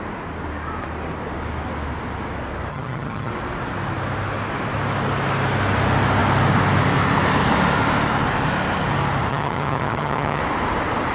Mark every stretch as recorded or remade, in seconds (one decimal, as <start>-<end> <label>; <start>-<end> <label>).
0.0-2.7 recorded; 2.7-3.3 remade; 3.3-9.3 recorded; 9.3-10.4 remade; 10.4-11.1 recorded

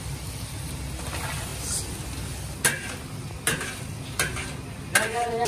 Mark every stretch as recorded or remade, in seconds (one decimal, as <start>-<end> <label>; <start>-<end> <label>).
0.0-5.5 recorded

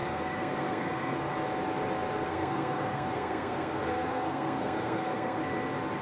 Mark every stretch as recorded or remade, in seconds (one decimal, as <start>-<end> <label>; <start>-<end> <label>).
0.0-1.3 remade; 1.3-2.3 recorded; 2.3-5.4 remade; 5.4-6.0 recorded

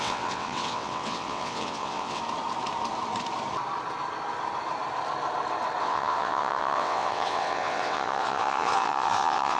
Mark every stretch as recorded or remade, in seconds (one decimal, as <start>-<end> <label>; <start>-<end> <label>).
0.0-2.2 remade; 2.2-5.8 recorded; 5.8-9.6 remade